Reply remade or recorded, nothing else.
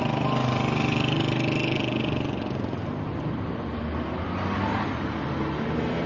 recorded